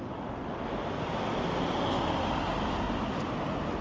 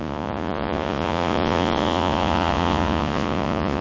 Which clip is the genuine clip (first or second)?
first